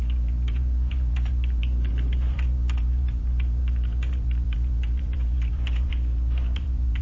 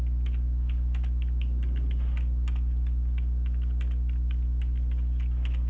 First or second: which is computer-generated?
first